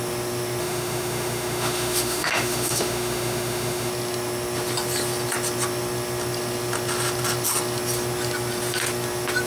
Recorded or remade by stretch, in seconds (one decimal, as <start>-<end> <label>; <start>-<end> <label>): 0.0-0.6 recorded; 0.6-3.9 remade; 3.9-9.5 recorded